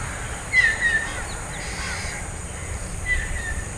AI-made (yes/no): yes